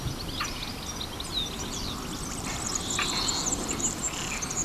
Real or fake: real